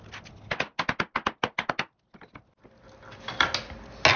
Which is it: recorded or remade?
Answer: recorded